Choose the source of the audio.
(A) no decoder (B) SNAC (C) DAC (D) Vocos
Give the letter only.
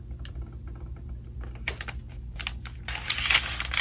A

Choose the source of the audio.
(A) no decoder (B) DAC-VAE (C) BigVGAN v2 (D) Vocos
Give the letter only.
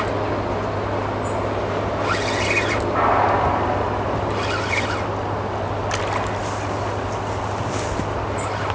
A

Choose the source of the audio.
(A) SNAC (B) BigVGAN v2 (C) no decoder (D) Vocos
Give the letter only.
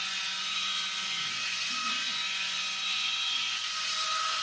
D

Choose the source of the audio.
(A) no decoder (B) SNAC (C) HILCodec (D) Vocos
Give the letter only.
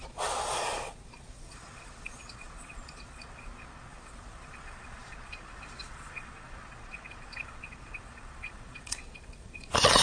D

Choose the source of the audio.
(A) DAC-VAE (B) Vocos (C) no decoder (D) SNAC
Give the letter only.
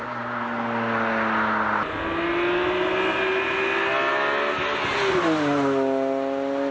C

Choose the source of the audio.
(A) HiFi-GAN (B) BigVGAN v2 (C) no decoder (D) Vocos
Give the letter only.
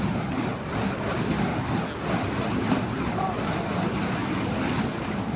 C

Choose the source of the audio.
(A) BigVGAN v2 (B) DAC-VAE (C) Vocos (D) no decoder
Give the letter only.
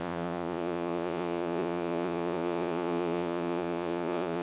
C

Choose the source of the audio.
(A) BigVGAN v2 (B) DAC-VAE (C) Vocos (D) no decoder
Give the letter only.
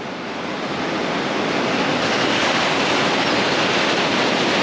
D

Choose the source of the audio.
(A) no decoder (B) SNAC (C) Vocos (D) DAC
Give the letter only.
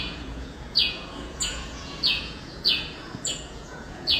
C